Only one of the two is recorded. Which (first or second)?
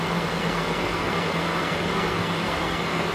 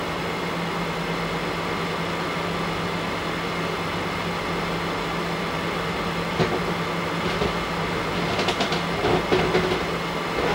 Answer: second